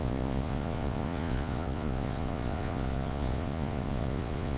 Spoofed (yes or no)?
yes